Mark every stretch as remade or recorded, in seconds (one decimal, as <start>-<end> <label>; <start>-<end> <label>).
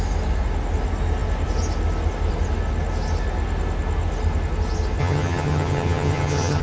0.0-5.0 recorded; 5.0-6.6 remade